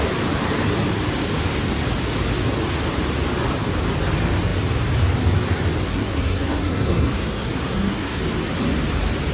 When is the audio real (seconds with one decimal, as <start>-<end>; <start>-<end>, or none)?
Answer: 0.0-5.9; 8.2-9.3